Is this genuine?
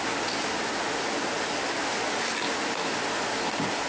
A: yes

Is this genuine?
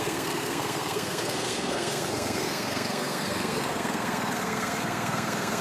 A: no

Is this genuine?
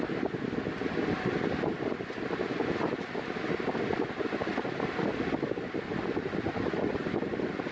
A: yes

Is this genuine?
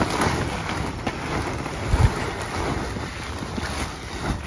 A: yes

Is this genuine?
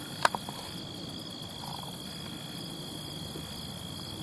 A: yes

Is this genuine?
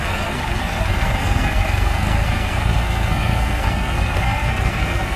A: no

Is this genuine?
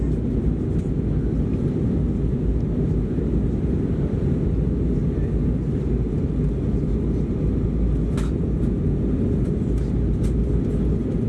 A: yes